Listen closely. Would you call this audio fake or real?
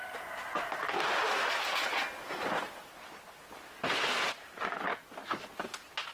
real